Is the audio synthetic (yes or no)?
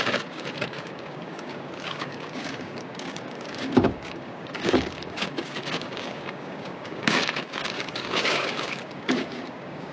yes